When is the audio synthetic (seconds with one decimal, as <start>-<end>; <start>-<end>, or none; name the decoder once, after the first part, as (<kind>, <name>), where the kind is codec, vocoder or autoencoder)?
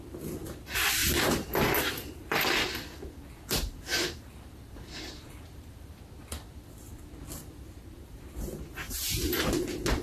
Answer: 1.0-6.0 (vocoder, BigVGAN v2); 7.8-9.4